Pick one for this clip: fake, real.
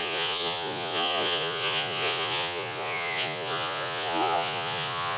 fake